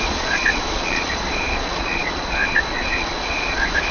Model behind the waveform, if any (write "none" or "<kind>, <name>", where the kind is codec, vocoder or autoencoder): vocoder, Vocos